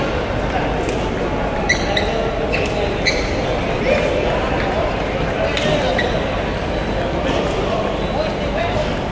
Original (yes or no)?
yes